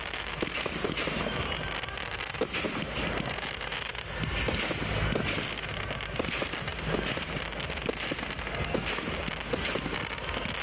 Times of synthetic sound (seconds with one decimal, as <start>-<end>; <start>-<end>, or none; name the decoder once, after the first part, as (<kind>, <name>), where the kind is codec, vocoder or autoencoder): none